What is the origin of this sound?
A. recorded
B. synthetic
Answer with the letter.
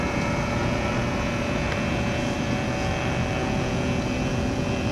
A